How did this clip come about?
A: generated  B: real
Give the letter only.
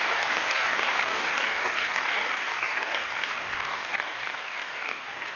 A